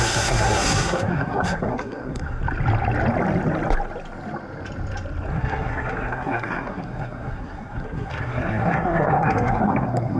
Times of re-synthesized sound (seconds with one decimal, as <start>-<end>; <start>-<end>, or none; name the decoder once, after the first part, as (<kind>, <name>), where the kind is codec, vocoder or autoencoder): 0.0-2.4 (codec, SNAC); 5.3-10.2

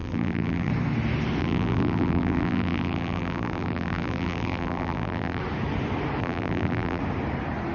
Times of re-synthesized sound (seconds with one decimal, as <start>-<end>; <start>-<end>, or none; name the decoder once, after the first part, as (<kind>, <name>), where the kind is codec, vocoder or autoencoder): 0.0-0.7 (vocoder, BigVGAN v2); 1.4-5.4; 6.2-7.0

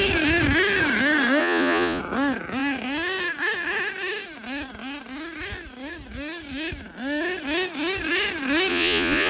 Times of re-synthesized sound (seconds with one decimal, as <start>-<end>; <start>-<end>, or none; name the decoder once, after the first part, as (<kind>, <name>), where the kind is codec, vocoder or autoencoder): 1.4-2.0 (vocoder, Vocos); 8.7-9.3

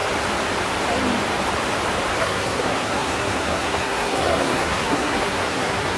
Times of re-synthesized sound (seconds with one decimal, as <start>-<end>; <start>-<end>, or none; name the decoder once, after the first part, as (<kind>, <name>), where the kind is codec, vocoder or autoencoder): 2.2-6.0 (codec, SNAC)

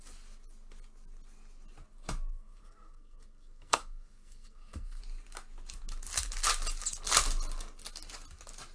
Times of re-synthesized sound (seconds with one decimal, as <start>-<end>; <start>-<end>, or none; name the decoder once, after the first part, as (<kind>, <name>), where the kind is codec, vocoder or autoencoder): 2.3-5.0 (codec, SNAC)